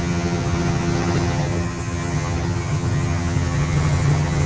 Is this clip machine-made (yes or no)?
yes